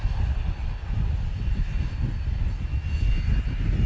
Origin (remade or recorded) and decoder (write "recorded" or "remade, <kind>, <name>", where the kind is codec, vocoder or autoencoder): recorded